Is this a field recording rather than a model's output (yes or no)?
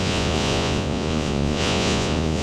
no